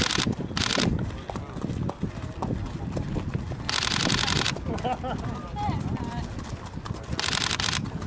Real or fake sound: real